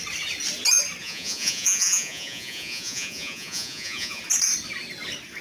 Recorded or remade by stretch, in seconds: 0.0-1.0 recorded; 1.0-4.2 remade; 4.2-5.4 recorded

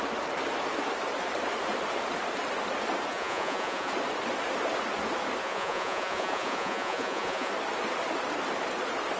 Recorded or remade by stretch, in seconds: 0.0-3.1 recorded; 3.1-3.9 remade; 3.9-5.4 recorded; 5.4-7.5 remade; 7.5-9.2 recorded